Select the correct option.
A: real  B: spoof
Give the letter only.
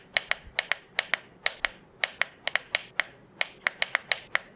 A